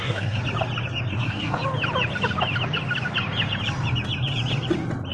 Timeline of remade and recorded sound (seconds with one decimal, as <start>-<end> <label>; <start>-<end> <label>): 0.0-0.4 remade; 0.4-1.1 recorded; 1.1-1.6 remade; 1.6-5.1 recorded